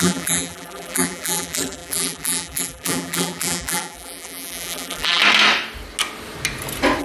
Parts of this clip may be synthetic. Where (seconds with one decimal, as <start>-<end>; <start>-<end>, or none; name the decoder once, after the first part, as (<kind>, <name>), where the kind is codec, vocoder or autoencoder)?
0.0-5.2 (vocoder, BigVGAN v2)